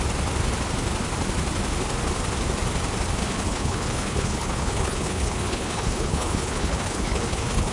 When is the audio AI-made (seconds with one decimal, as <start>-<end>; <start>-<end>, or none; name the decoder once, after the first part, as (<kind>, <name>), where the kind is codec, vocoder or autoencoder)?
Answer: 3.2-7.7 (codec, HILCodec)